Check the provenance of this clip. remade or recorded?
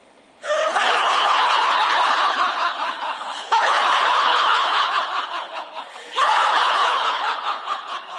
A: remade